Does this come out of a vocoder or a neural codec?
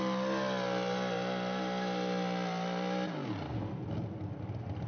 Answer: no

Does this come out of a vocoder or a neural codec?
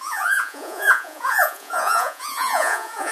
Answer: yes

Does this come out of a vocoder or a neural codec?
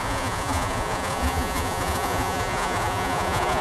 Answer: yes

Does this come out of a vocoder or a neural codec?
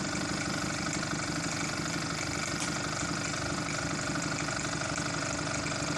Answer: no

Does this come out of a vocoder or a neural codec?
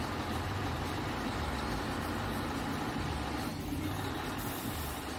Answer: no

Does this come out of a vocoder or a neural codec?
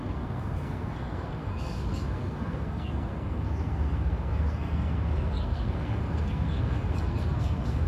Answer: yes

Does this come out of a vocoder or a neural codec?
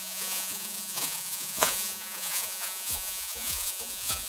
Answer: yes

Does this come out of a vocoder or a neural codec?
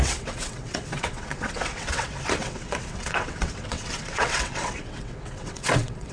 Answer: yes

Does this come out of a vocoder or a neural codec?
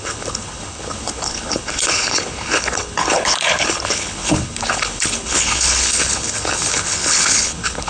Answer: yes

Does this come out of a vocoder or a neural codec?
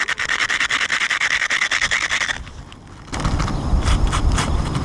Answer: no